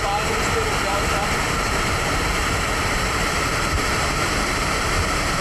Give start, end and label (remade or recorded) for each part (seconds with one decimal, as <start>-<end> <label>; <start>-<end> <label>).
0.0-0.9 recorded; 0.9-4.1 remade; 4.1-5.4 recorded